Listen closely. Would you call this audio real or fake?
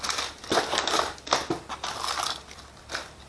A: real